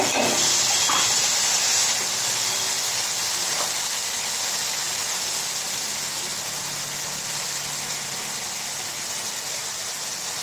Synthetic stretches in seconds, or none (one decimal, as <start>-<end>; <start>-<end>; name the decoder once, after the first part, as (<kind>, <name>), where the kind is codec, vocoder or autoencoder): none

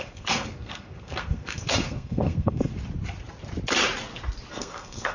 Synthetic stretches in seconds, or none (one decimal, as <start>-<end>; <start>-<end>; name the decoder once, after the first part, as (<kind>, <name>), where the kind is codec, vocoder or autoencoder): 0.0-2.7 (codec, SNAC); 4.5-5.1

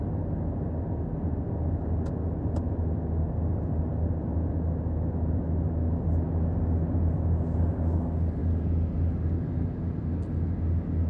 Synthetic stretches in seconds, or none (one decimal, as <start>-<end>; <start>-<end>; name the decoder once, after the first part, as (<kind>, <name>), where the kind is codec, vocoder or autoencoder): 3.5-4.5 (vocoder, BigVGAN v2)

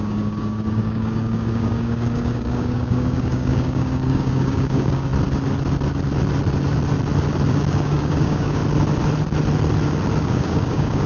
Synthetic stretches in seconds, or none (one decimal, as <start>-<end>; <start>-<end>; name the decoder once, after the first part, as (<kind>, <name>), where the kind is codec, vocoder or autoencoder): 0.0-5.1 (codec, DAC); 7.5-8.6; 10.2-11.1

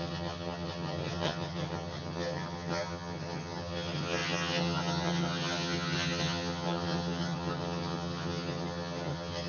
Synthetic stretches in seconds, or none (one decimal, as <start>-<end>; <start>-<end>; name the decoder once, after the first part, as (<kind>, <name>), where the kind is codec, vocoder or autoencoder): 0.0-9.5 (vocoder, HiFi-GAN)